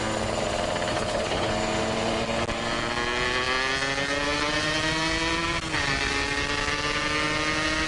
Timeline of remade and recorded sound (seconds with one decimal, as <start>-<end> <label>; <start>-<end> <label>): 0.0-0.9 recorded; 0.9-1.5 remade; 1.5-7.9 recorded